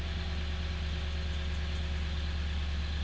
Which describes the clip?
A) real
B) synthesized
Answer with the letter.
A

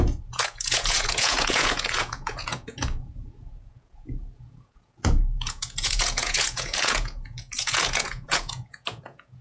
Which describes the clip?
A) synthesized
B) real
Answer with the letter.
A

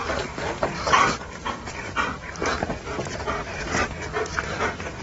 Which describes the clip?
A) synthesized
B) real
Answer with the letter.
A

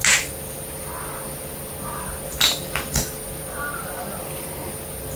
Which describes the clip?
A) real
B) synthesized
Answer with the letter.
A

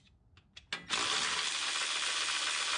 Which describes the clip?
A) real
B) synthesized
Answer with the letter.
A